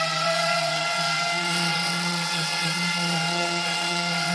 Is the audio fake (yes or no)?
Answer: yes